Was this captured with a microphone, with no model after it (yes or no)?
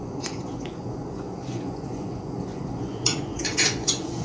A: no